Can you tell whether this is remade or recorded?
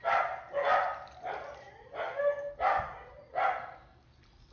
recorded